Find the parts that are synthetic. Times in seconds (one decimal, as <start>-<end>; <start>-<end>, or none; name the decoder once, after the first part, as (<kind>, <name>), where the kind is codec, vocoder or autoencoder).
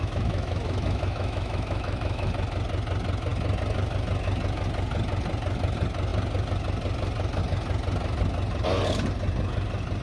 0.0-2.3 (autoencoder, DAC-VAE)